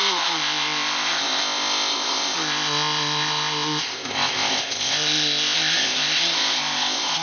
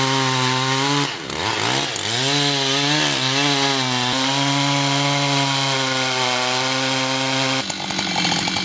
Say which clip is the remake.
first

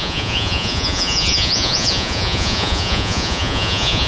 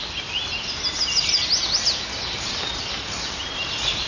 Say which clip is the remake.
first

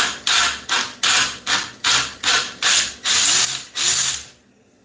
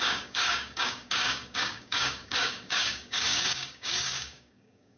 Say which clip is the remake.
second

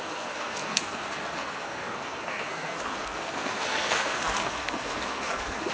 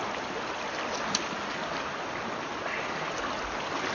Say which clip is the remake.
first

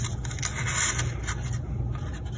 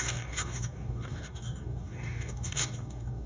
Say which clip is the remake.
second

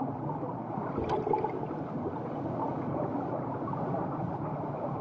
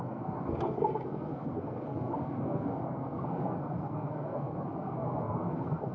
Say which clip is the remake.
second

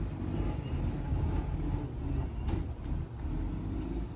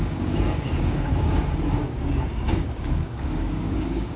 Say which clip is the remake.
second